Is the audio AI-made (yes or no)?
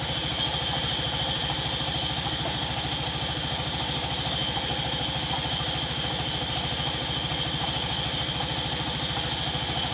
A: no